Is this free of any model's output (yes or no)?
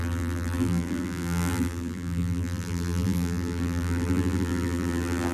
no